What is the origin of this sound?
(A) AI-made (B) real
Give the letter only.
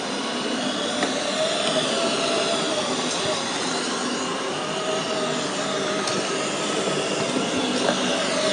B